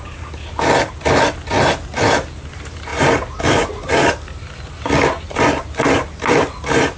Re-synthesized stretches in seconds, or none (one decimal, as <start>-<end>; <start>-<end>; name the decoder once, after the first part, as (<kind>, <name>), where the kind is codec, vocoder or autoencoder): none